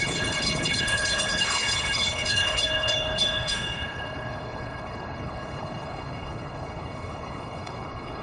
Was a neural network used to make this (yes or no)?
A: yes